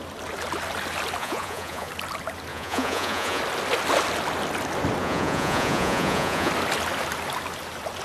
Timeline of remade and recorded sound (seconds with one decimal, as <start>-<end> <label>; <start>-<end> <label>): 0.0-1.2 recorded; 1.2-1.9 remade; 1.9-2.5 recorded; 2.5-3.4 remade; 3.4-5.0 recorded; 5.0-6.5 remade; 6.5-8.0 recorded